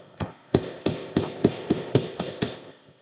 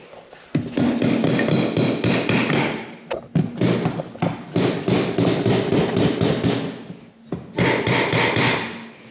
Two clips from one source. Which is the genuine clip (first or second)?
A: second